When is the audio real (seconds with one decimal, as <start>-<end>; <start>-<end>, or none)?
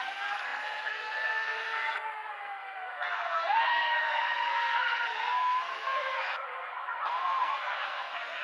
none